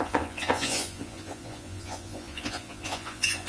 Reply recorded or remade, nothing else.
remade